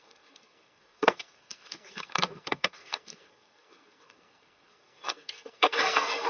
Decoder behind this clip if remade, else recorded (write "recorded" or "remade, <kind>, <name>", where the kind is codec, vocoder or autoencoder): remade, codec, SNAC